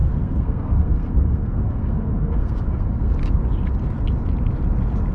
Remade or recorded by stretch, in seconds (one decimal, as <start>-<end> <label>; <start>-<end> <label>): 0.0-3.1 remade; 3.1-5.1 recorded